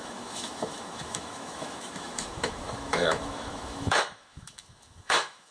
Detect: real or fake fake